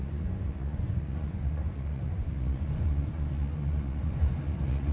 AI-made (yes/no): yes